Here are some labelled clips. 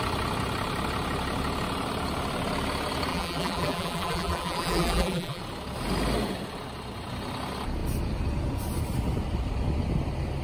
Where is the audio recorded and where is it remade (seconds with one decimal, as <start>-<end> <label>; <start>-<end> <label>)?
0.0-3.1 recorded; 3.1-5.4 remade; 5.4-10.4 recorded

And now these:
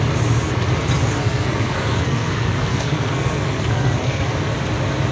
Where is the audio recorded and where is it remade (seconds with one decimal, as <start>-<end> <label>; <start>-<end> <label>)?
0.0-1.2 recorded; 1.2-4.3 remade; 4.3-5.1 recorded

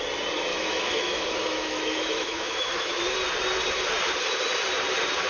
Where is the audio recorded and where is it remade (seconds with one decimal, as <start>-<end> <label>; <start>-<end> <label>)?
0.0-0.5 recorded; 0.5-3.0 remade; 3.0-5.3 recorded

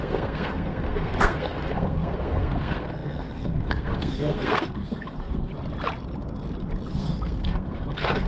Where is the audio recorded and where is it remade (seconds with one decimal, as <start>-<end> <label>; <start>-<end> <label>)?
0.0-5.5 remade; 5.5-6.9 recorded; 6.9-8.3 remade

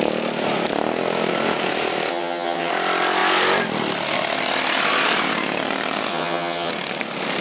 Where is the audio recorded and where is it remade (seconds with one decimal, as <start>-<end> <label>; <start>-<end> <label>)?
0.0-2.1 recorded; 2.1-2.7 remade; 2.7-6.1 recorded; 6.1-6.7 remade; 6.7-7.4 recorded

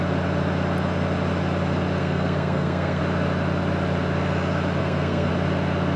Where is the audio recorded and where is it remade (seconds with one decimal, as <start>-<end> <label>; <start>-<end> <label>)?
0.0-2.0 recorded; 2.0-3.0 remade; 3.0-4.8 recorded; 4.8-5.3 remade; 5.3-6.0 recorded

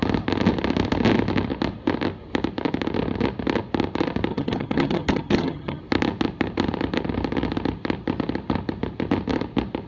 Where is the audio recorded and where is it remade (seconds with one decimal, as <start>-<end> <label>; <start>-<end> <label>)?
0.0-4.3 recorded; 4.3-5.8 remade; 5.8-9.9 recorded

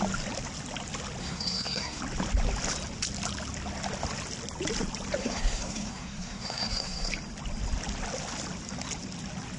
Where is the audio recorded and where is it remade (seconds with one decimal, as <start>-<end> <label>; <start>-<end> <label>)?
0.0-1.2 recorded; 1.2-2.0 remade; 2.0-5.2 recorded; 5.2-7.1 remade; 7.1-9.6 recorded